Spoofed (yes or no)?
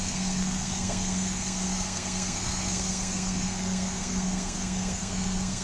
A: yes